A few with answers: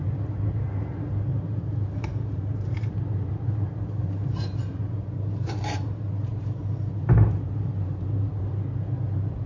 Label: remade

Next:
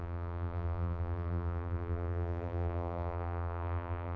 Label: remade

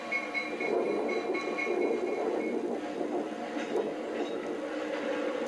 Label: recorded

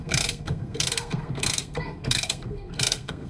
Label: remade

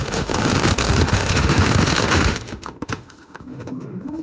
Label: remade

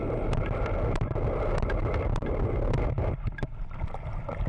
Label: recorded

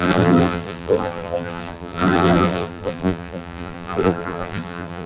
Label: remade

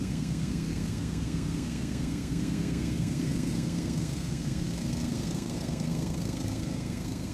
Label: remade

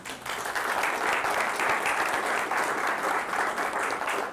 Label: recorded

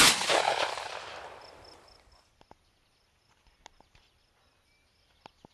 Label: recorded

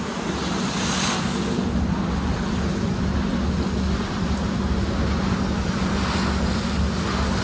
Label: recorded